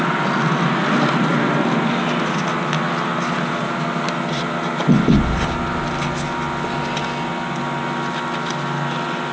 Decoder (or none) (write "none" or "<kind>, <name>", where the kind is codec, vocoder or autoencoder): none